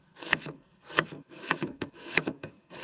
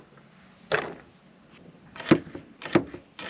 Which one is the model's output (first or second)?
first